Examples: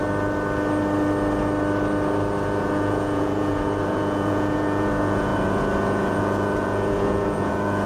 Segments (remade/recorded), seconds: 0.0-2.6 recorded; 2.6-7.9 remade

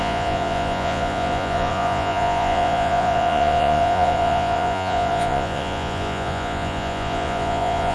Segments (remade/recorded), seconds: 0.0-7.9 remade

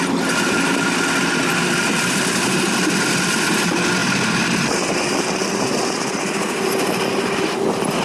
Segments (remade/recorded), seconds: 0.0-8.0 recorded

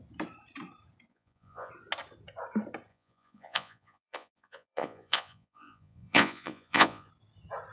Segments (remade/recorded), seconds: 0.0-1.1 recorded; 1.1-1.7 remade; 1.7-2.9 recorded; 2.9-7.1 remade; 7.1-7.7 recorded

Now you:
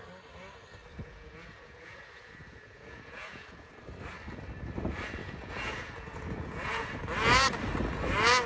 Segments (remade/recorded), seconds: 0.0-0.9 recorded; 0.9-3.7 remade; 3.7-5.2 recorded; 5.2-7.0 remade; 7.0-8.5 recorded